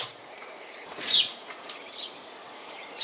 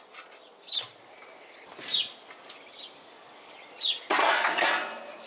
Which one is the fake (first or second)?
first